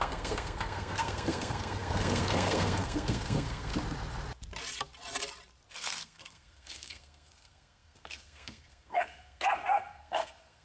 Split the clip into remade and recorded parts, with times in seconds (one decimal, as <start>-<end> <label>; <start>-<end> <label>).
0.0-3.7 remade; 3.7-5.7 recorded; 5.7-10.6 remade